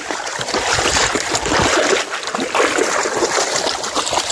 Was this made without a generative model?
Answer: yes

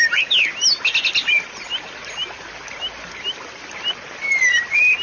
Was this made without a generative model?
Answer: yes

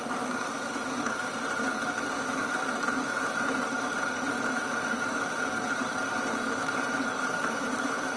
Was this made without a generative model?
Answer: no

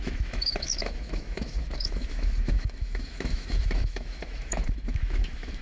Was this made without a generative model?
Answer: no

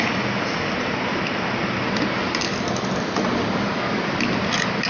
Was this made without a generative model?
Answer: yes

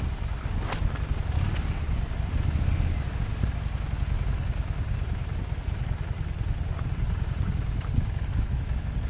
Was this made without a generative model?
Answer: yes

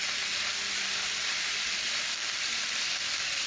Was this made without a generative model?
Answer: yes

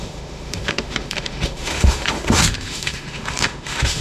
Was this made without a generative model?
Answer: no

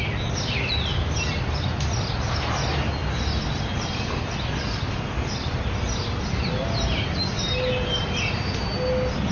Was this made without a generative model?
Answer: yes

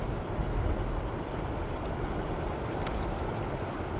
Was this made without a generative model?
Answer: yes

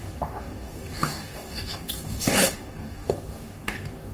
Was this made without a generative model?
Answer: no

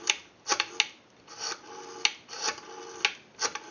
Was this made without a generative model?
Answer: yes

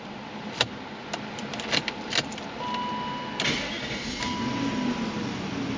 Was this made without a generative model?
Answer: yes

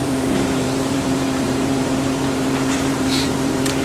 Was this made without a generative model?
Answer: no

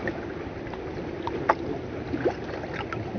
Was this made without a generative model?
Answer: yes